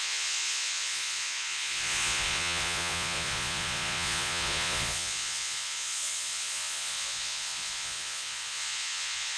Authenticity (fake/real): fake